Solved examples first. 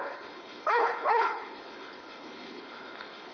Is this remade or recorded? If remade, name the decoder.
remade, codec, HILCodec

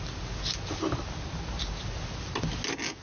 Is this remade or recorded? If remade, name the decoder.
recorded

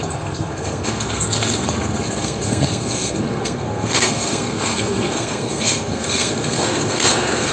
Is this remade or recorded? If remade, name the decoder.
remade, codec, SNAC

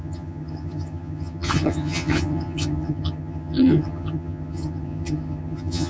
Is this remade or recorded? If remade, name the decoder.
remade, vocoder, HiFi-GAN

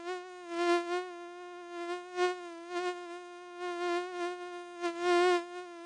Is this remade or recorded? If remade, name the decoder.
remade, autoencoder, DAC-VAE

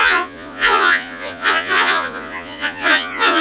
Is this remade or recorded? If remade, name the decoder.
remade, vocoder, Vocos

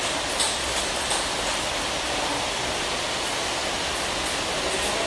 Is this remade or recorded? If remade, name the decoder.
recorded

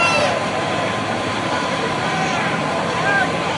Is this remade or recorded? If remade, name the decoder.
remade, vocoder, BigVGAN v2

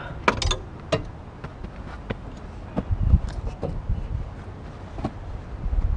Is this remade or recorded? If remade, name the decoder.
recorded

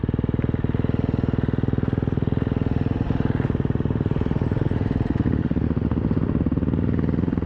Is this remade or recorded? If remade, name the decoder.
recorded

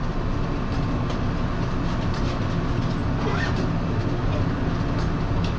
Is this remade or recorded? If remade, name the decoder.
recorded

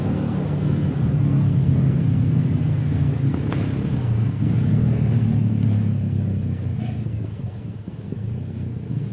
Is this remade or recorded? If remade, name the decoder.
remade, codec, SNAC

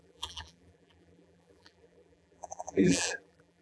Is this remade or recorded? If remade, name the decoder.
remade, vocoder, BigVGAN v2